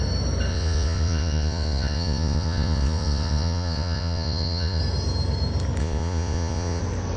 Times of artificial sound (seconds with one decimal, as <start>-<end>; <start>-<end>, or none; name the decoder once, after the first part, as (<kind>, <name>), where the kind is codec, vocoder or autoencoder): 0.5-4.8 (vocoder, Vocos); 5.8-6.8